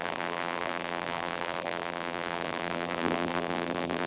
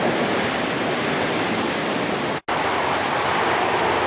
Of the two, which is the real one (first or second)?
second